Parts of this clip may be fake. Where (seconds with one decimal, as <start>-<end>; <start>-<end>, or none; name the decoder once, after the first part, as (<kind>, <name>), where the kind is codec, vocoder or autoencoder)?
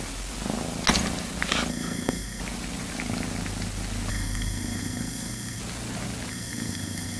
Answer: 1.7-2.4 (codec, SNAC); 4.1-5.6; 6.3-7.2